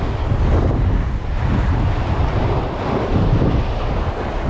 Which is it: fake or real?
real